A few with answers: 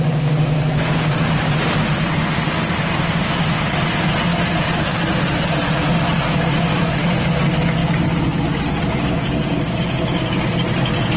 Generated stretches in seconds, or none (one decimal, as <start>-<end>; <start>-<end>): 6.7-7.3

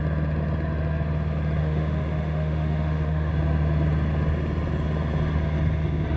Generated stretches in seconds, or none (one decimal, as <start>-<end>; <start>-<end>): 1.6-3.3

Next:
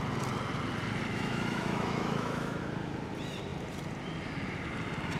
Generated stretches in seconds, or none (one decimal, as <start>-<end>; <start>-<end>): 1.1-2.6